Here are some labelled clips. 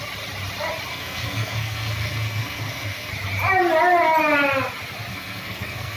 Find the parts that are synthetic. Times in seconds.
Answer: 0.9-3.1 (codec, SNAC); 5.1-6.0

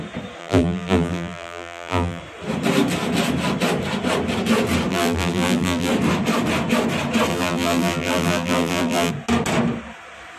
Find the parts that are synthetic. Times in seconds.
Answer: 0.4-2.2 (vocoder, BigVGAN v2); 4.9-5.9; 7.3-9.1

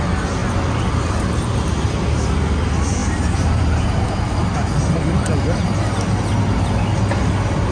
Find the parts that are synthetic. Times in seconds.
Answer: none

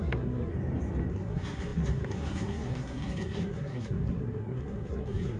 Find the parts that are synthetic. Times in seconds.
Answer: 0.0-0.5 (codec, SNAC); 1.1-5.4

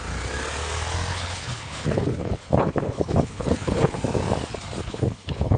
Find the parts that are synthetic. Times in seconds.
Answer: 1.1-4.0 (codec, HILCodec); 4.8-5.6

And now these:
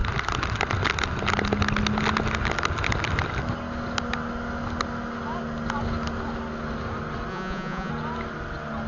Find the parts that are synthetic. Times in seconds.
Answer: 7.3-7.9 (vocoder, Vocos)